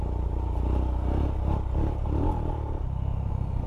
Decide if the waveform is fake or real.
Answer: real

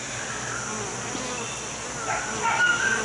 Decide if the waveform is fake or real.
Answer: real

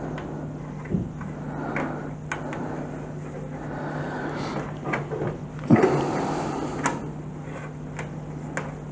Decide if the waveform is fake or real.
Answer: real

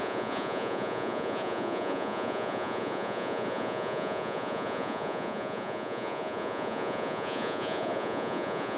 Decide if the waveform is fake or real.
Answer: fake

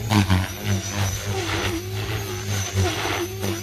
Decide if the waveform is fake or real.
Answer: real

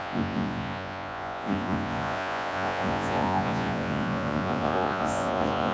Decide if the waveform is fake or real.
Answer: fake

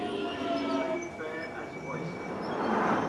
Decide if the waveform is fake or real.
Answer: real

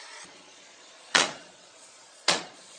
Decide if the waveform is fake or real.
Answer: fake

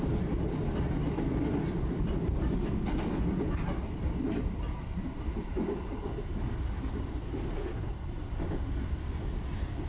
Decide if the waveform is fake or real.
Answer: real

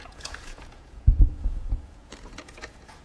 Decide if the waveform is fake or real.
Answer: fake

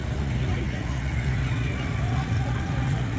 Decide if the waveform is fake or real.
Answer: fake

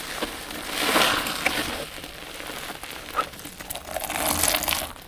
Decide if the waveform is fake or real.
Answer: real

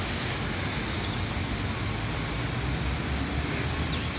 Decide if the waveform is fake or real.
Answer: real